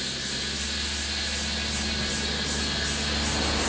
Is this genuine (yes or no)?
yes